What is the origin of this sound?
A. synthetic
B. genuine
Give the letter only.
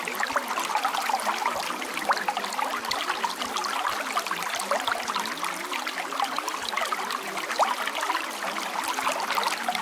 B